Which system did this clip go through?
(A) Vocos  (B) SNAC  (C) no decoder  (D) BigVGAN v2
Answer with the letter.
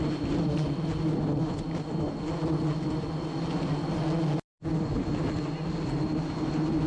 C